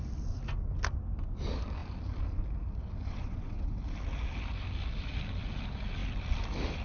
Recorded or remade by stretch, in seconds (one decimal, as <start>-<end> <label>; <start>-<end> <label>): 0.0-3.1 recorded; 3.1-3.8 remade; 3.8-6.8 recorded